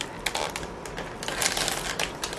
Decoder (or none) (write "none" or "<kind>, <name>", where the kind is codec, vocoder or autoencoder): none